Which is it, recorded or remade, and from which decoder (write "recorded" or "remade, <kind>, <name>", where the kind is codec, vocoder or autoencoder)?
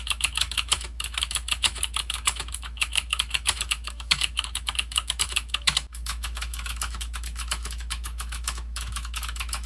remade, autoencoder, DAC-VAE